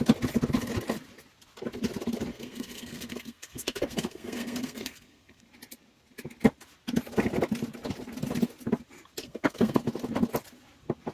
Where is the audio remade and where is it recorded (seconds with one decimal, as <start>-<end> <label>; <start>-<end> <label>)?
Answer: 0.0-2.3 recorded; 2.3-5.4 remade; 5.4-9.2 recorded; 9.2-9.8 remade; 9.8-11.1 recorded